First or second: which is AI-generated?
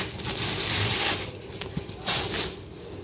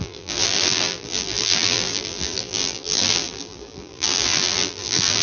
second